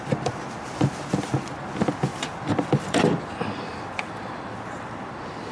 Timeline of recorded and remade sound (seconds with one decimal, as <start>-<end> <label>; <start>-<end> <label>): 0.0-2.1 recorded; 2.1-5.5 remade